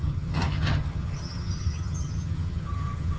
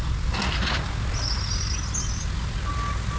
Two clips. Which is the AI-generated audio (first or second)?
first